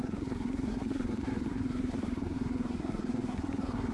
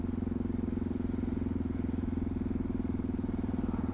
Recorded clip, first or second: second